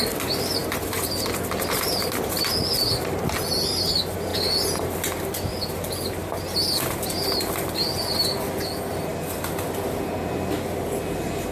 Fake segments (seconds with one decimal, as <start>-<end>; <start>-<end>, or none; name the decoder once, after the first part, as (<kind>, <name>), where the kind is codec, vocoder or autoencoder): 0.6-2.4 (vocoder, BigVGAN v2)